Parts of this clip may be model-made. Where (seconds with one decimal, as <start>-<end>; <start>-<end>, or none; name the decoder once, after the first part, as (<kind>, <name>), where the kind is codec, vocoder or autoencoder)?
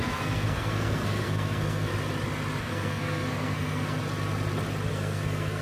0.0-1.9 (codec, SNAC); 2.6-4.0; 4.9-5.6